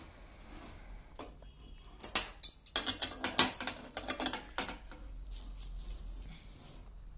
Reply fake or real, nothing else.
real